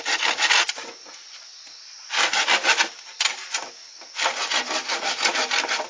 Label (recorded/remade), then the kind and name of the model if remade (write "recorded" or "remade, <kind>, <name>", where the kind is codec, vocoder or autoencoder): recorded